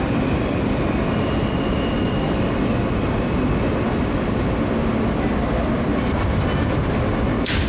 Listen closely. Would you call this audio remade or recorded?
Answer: recorded